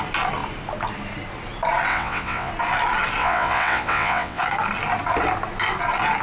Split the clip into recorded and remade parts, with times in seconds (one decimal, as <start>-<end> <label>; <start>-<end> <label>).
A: 0.0-1.9 recorded; 1.9-2.5 remade; 2.5-3.2 recorded; 3.2-4.4 remade; 4.4-6.2 recorded